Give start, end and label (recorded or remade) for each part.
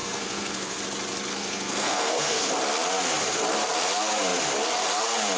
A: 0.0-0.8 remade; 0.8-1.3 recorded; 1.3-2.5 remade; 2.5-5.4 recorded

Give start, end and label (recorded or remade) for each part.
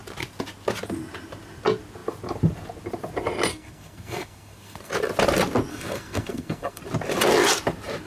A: 0.0-3.5 recorded; 3.5-4.9 remade; 4.9-5.7 recorded; 5.7-6.8 remade; 6.8-8.1 recorded